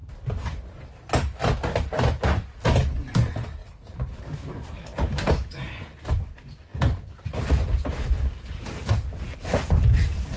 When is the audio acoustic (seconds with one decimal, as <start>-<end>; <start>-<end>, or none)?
0.0-3.6; 5.3-6.7